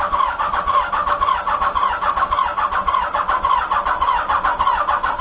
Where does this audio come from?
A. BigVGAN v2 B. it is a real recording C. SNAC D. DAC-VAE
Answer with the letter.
B